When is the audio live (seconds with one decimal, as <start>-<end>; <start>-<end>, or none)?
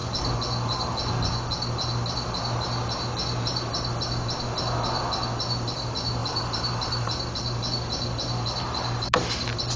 0.0-6.2; 7.2-9.8